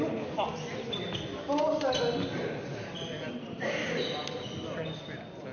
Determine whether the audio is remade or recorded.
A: recorded